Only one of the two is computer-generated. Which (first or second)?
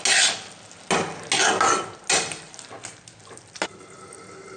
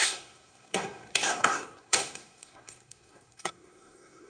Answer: second